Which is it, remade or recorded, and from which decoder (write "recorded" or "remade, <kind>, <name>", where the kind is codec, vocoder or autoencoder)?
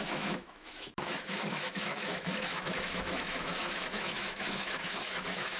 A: remade, autoencoder, DAC-VAE